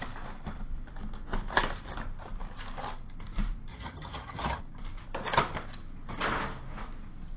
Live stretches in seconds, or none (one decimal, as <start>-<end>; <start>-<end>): 0.0-3.7; 4.6-7.4